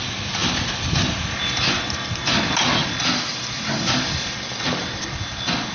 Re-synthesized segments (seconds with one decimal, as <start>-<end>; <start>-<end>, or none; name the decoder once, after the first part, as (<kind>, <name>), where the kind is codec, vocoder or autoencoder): 2.8-4.6 (vocoder, BigVGAN v2)